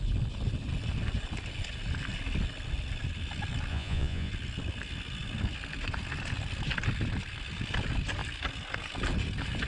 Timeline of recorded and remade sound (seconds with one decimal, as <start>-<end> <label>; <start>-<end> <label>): 0.0-3.7 recorded; 3.7-4.3 remade; 4.3-9.7 recorded